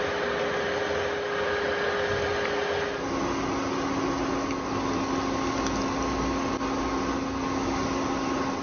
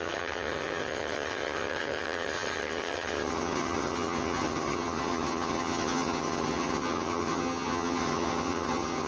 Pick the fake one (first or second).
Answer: second